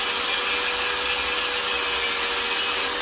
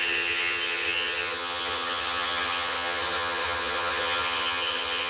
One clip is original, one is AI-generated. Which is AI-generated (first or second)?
second